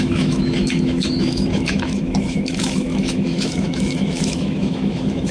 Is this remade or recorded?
remade